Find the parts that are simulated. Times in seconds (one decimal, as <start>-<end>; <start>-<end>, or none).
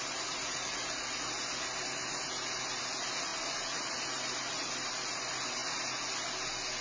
none